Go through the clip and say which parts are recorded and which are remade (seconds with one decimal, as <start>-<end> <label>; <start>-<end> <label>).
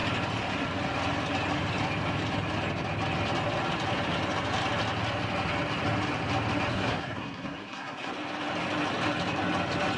0.0-6.7 recorded; 6.7-8.1 remade; 8.1-10.0 recorded